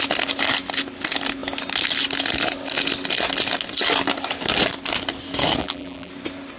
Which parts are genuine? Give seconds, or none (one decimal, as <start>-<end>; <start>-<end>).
0.0-5.6; 6.1-6.6